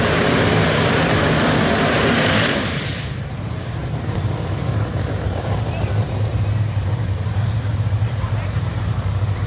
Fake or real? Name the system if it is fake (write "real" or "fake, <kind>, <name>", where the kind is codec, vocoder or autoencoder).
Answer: fake, vocoder, BigVGAN v2